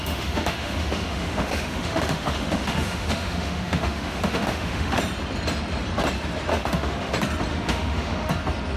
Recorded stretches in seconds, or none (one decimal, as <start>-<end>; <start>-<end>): 5.0-6.5; 7.1-7.5; 8.3-8.8